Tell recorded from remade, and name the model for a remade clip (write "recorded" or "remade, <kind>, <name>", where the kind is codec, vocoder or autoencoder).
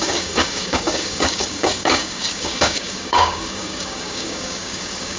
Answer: remade, codec, DAC